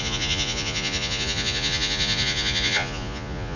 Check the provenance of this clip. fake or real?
fake